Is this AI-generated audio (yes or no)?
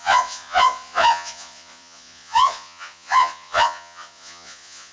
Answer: yes